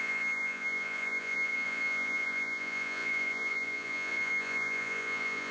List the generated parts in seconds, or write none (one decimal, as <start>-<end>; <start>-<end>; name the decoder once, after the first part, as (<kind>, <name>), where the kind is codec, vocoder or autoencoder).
0.0-5.5 (vocoder, Vocos)